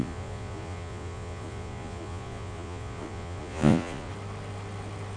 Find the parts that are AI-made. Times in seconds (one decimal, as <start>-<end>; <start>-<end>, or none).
0.0-4.1